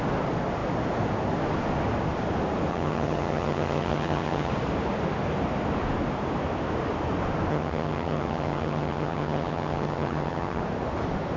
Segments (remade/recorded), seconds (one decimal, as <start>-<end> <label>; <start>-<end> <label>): 0.0-2.7 recorded; 2.7-4.5 remade; 4.5-7.5 recorded; 7.5-10.6 remade; 10.6-11.4 recorded